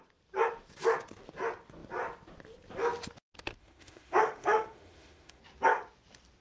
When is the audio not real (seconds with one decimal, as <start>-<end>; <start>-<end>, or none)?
3.6-5.4